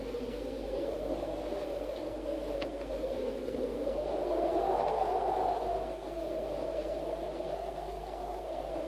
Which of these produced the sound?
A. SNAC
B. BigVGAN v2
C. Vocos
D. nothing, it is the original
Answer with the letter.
A